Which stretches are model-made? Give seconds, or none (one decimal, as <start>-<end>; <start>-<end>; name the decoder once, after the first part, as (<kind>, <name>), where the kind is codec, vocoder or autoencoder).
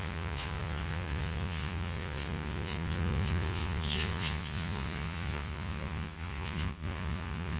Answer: 0.0-7.6 (vocoder, Vocos)